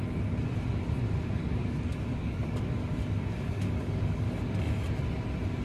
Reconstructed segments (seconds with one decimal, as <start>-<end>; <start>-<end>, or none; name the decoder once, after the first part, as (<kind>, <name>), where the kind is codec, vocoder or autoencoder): 1.4-4.4 (codec, DAC)